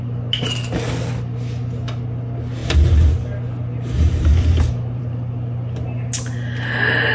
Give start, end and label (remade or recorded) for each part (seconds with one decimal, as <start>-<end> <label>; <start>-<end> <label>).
0.0-7.1 recorded